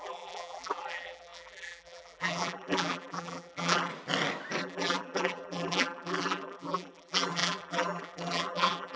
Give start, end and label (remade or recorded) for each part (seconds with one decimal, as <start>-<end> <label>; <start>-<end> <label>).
0.0-3.9 remade; 3.9-4.6 recorded; 4.6-9.0 remade